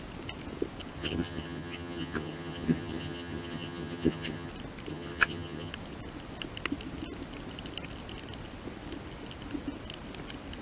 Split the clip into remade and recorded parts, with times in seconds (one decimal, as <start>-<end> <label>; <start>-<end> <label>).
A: 0.0-1.0 recorded; 1.0-4.5 remade; 4.5-4.9 recorded; 4.9-5.7 remade; 5.7-10.6 recorded